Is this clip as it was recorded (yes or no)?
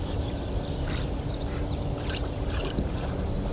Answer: no